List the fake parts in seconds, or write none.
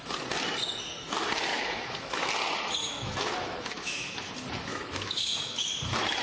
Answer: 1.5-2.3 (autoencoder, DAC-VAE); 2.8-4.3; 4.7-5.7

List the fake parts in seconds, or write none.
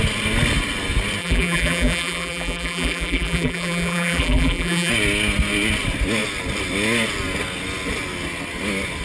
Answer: 1.2-4.9 (vocoder, BigVGAN v2)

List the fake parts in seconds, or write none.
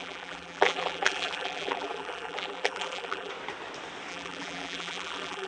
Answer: 0.0-3.3 (vocoder, BigVGAN v2); 4.1-5.5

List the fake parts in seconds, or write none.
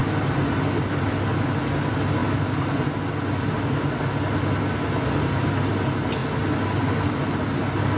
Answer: none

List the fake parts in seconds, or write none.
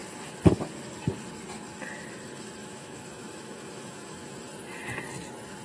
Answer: 2.6-4.3 (autoencoder, DAC-VAE)